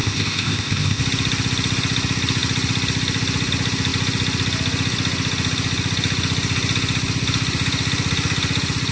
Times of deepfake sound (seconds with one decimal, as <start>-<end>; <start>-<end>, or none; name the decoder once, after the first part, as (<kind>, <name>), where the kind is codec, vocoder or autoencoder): 0.0-1.0 (codec, ZipCodec)